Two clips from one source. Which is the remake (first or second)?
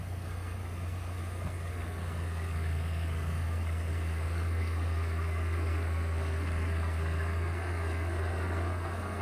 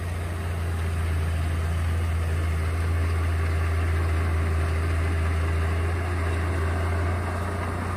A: first